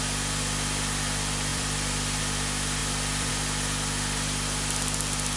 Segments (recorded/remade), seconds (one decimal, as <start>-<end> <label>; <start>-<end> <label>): 0.0-1.5 recorded; 1.5-2.2 remade; 2.2-2.8 recorded; 2.8-3.3 remade; 3.3-5.4 recorded